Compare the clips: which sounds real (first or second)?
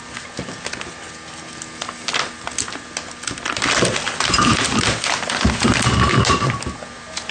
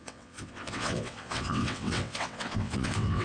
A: first